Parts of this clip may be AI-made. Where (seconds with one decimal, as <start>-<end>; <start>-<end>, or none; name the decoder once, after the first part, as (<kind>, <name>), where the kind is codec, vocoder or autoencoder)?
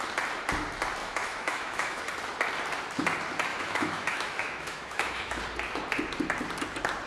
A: 1.0-2.0 (autoencoder, DAC-VAE); 3.5-5.4